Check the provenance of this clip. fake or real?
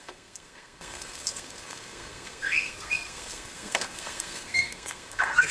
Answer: fake